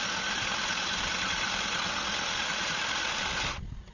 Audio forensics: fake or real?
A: real